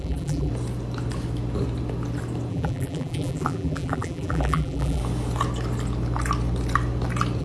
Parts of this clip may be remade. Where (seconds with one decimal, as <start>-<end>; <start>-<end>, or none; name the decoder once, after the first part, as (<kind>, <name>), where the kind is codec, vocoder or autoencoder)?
0.0-0.5 (vocoder, BigVGAN v2); 2.5-5.0